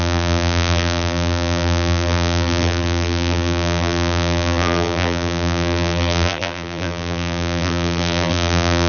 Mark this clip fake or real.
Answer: fake